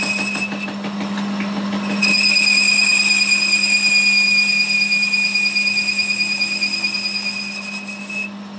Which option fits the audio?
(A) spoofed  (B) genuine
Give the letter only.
B